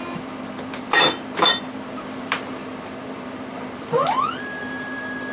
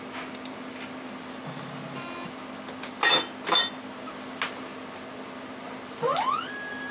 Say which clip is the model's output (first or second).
first